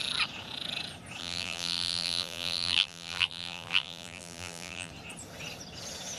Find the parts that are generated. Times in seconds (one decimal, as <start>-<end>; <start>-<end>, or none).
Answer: 1.2-4.9